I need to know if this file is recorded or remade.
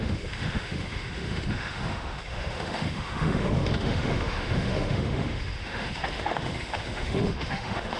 remade